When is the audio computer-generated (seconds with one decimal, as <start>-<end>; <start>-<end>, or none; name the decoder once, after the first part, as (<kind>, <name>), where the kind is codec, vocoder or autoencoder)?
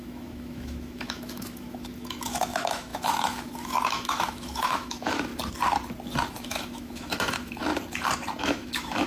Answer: 0.0-5.3 (autoencoder, DAC-VAE); 6.3-7.7; 8.4-9.1